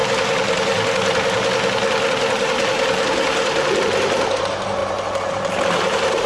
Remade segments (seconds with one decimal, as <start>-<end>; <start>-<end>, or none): none